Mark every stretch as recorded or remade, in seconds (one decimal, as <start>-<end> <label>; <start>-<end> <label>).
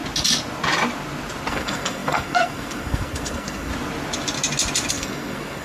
0.0-1.5 recorded; 1.5-3.7 remade; 3.7-4.9 recorded; 4.9-5.6 remade